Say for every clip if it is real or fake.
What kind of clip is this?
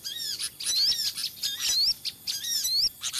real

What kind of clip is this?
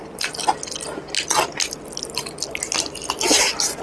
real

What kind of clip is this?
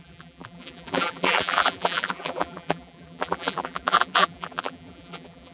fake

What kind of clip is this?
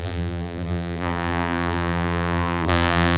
fake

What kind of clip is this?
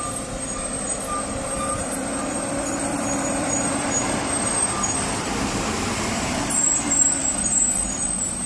fake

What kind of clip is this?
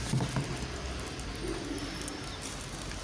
real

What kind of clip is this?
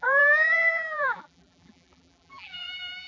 fake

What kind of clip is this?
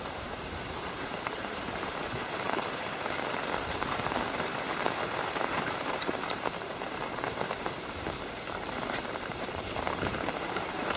fake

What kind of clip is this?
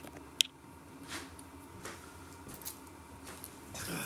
real